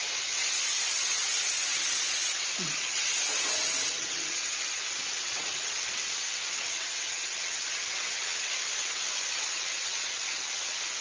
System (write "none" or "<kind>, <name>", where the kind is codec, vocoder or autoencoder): vocoder, WaveNeXt